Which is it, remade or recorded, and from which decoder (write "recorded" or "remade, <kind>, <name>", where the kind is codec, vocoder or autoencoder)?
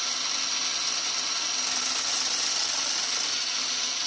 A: recorded